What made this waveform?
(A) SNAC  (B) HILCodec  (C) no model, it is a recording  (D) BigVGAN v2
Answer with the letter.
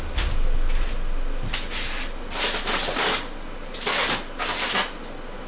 C